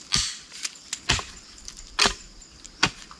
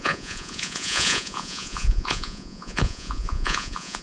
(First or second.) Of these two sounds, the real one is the first